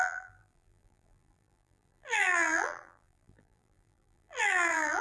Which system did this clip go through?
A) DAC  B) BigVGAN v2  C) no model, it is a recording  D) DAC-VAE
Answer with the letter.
B